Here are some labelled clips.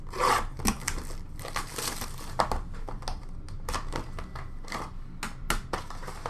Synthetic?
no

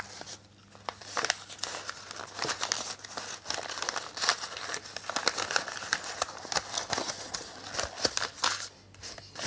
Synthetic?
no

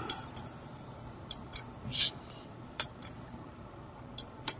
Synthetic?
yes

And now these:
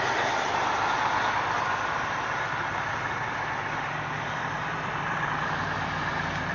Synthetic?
yes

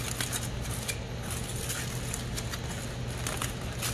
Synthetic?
no